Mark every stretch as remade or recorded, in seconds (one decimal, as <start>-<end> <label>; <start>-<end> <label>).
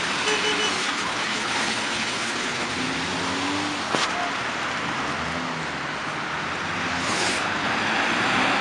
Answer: 0.0-0.8 recorded; 0.8-2.7 remade; 2.7-6.9 recorded; 6.9-7.7 remade; 7.7-8.6 recorded